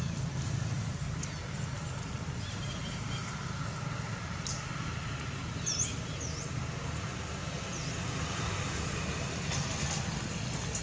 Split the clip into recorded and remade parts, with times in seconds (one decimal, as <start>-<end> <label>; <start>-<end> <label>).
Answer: 0.0-10.8 recorded